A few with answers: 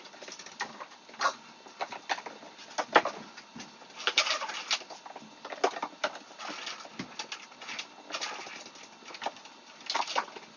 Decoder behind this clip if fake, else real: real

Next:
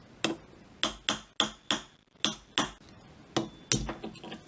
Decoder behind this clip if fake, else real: real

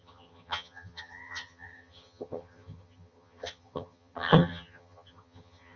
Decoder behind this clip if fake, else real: fake, vocoder, HiFi-GAN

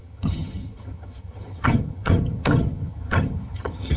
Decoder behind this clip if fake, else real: fake, vocoder, HiFi-GAN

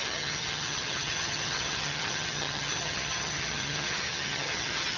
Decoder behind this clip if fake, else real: fake, vocoder, HiFi-GAN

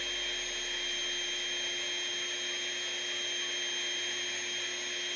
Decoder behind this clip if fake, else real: real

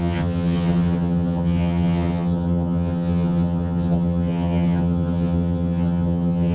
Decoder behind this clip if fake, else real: fake, vocoder, HiFi-GAN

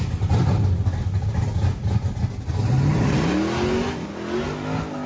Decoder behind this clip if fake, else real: real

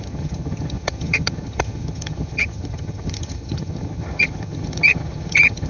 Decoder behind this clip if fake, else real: fake, vocoder, HiFi-GAN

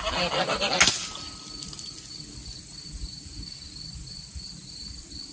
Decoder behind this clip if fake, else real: real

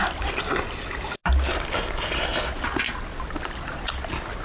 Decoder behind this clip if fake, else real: real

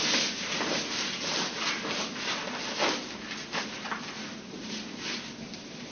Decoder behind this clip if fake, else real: real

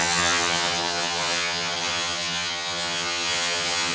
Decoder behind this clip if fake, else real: fake, vocoder, HiFi-GAN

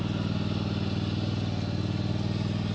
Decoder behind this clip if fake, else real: real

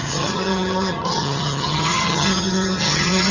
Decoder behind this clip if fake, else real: fake, vocoder, HiFi-GAN